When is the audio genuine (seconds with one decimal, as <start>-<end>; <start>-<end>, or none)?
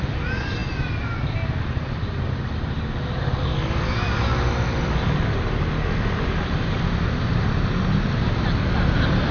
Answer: 0.0-9.3